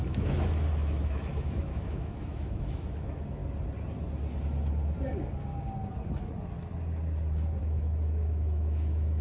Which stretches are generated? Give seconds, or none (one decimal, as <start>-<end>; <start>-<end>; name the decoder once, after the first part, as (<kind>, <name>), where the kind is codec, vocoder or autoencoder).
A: 0.0-3.4 (autoencoder, DAC-VAE); 7.6-9.2